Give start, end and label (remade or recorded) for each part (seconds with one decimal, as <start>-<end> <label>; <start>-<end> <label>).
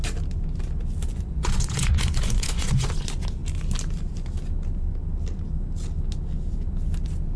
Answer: 0.0-1.1 recorded; 1.1-2.9 remade; 2.9-7.4 recorded